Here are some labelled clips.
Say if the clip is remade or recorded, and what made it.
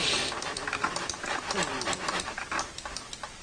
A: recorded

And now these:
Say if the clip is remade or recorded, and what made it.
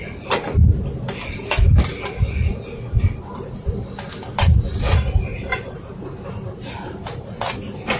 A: recorded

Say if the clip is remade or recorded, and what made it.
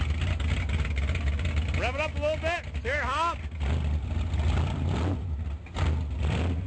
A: recorded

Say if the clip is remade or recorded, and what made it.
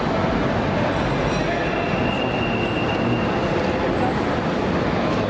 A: recorded